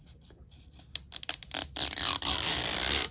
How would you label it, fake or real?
real